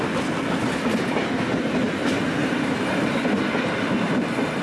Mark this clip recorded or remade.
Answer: recorded